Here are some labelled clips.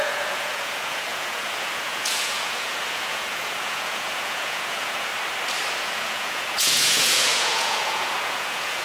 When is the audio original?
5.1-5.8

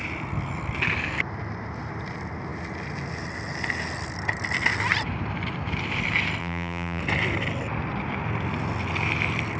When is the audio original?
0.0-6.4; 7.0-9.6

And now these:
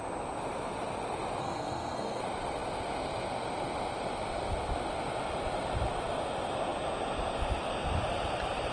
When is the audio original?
0.0-1.4; 2.2-8.7